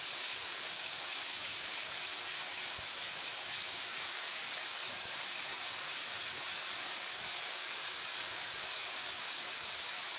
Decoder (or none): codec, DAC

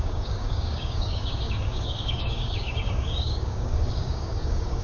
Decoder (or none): codec, DAC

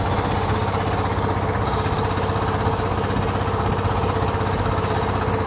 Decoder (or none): none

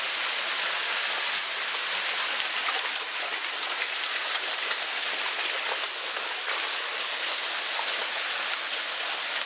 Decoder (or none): none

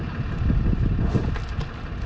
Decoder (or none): none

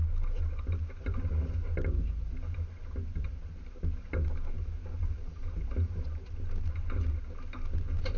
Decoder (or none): none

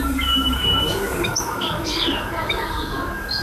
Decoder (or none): codec, DAC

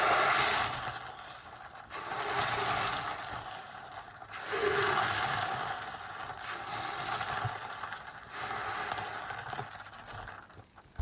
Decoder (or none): none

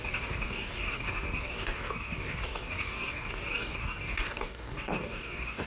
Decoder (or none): codec, DAC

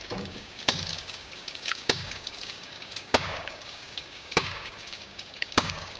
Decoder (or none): codec, DAC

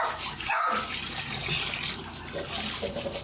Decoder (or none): none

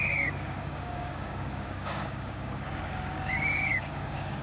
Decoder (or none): codec, DAC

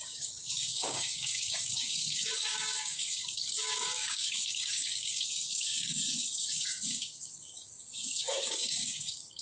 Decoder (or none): codec, DAC